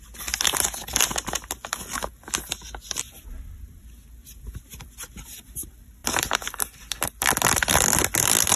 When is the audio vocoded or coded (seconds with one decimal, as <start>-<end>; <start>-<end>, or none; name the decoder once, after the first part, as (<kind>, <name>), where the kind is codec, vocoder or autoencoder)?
none